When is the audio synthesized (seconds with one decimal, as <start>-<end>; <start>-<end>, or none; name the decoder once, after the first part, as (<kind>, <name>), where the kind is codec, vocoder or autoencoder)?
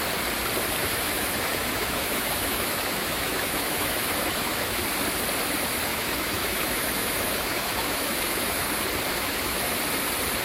0.8-4.8 (autoencoder, DAC-VAE); 5.9-8.7; 9.1-9.7